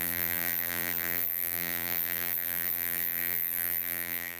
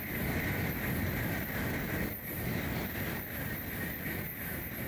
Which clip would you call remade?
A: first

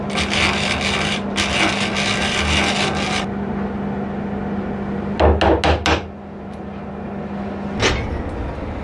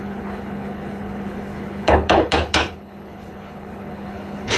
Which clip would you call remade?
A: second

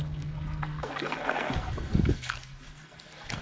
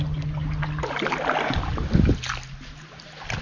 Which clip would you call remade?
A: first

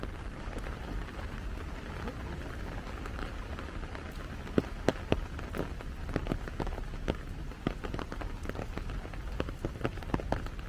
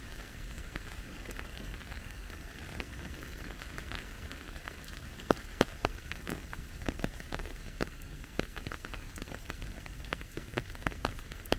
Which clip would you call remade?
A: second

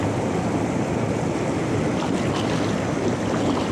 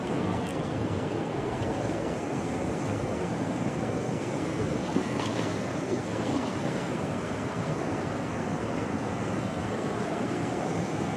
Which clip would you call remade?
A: second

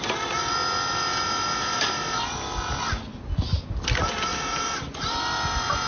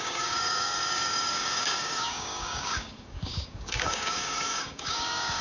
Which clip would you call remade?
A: second